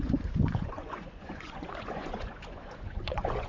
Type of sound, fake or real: fake